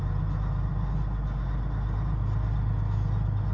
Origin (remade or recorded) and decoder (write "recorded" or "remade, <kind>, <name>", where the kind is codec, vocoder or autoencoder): recorded